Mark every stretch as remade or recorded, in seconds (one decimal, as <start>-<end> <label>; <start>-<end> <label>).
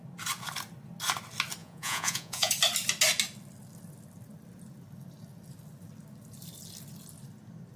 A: 0.0-1.6 recorded; 1.6-2.5 remade; 2.5-7.8 recorded